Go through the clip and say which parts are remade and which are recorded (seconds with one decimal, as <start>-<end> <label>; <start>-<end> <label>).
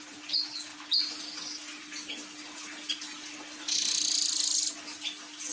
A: 0.0-5.5 recorded